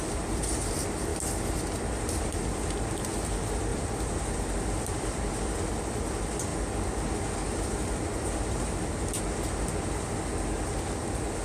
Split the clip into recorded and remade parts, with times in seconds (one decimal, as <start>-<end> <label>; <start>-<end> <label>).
0.0-3.7 recorded; 3.7-5.3 remade; 5.3-11.4 recorded